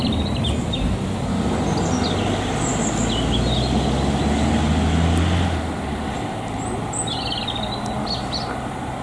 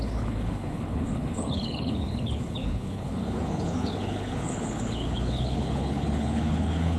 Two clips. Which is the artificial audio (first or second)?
second